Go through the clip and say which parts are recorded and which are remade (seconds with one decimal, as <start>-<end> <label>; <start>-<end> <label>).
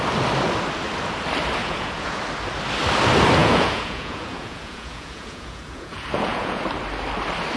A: 0.0-1.6 recorded; 1.6-2.2 remade; 2.2-3.4 recorded; 3.4-6.6 remade; 6.6-7.6 recorded